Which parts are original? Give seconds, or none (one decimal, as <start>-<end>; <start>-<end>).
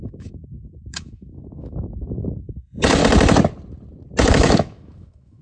3.0-4.3